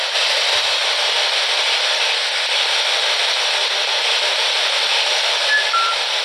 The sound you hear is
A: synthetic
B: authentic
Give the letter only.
B